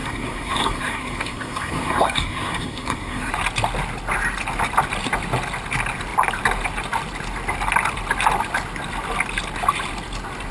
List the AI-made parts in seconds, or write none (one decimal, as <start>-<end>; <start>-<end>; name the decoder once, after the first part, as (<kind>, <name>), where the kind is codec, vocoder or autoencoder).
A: 0.0-3.3 (codec, SNAC)